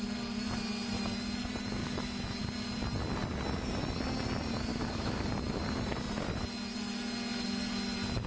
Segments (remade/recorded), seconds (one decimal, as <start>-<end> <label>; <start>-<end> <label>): 0.0-1.8 recorded; 1.8-2.4 remade; 2.4-4.7 recorded; 4.7-5.2 remade; 5.2-8.3 recorded